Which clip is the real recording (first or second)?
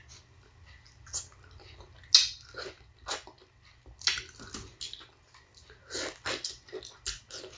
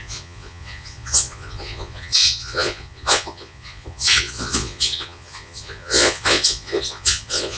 first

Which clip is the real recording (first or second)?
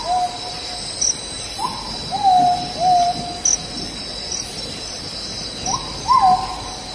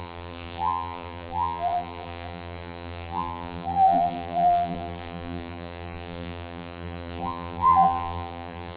first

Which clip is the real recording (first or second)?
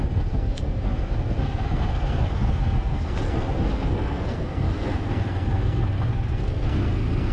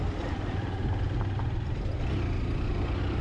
second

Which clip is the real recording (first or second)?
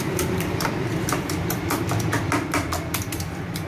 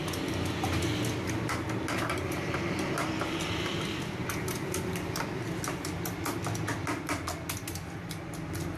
second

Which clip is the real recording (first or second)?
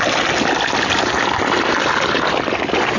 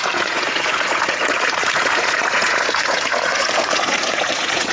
first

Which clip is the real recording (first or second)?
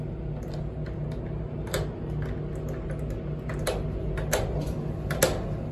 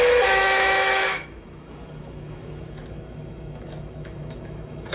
first